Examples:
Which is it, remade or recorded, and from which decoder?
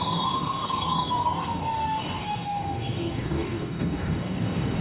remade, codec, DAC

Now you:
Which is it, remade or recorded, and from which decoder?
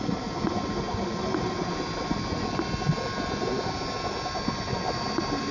recorded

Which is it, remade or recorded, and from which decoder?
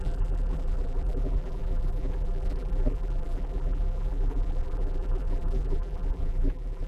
remade, vocoder, BigVGAN v2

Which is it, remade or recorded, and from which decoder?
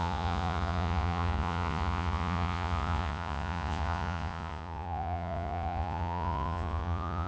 remade, vocoder, Vocos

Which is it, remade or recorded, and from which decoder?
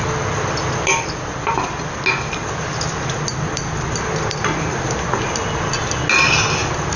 recorded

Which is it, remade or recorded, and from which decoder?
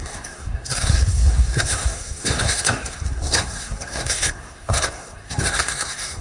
remade, codec, SNAC